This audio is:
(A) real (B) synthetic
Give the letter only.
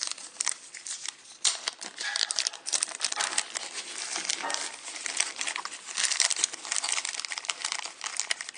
A